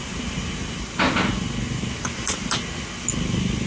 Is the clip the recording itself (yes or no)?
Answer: yes